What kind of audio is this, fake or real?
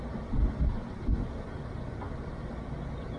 real